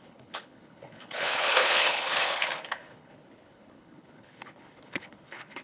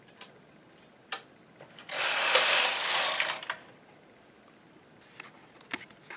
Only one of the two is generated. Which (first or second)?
first